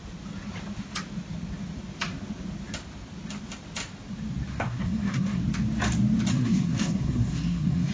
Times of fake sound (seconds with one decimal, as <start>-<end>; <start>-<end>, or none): 4.5-5.4; 6.3-7.9

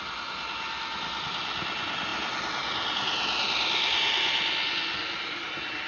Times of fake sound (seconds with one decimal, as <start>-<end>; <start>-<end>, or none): none

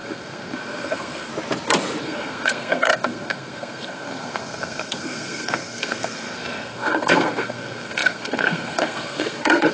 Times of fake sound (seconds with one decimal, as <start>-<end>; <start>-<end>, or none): 0.0-1.3; 2.0-9.7

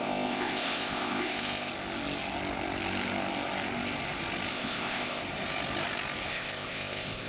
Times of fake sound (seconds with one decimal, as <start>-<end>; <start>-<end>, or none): 0.0-1.7; 4.5-5.2; 6.3-7.3

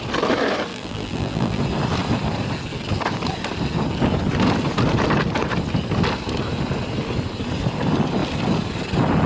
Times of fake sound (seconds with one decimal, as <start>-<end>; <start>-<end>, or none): 0.7-1.6

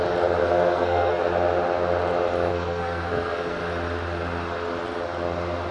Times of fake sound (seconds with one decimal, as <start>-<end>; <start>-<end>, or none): 0.4-1.2; 2.5-3.6

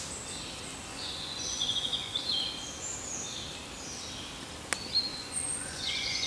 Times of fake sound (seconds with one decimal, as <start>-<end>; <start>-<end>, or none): 0.9-2.5; 5.1-6.3